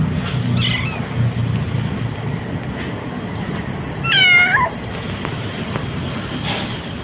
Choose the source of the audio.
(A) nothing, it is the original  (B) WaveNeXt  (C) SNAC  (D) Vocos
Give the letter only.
A